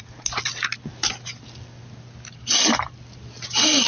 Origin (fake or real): real